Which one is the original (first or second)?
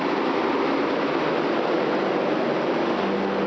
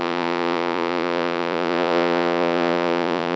first